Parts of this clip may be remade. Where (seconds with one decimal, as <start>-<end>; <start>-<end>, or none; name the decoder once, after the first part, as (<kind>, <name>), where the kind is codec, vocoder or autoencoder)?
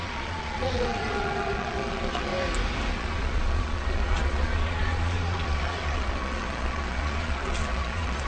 0.0-2.3 (vocoder, Vocos); 2.9-8.3